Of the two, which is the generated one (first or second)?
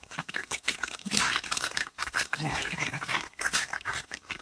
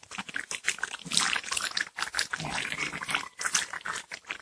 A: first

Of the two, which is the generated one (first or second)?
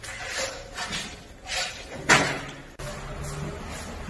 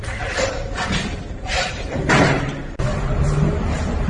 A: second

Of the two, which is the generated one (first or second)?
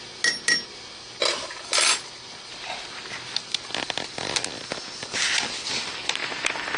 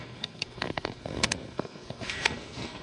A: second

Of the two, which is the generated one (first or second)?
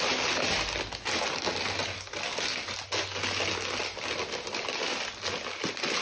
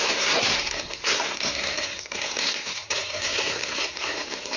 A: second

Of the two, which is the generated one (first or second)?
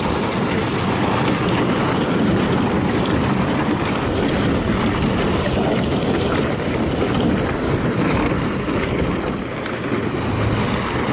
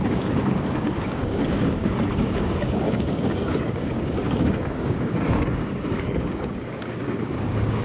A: second